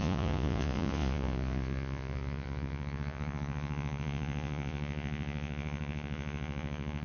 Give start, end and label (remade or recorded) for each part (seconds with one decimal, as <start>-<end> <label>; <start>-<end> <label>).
0.0-7.0 remade